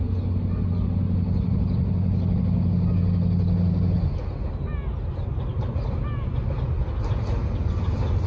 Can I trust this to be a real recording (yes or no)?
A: yes